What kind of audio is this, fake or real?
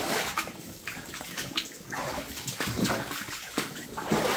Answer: fake